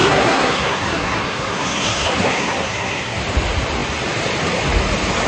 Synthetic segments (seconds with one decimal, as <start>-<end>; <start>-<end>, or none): 0.0-3.2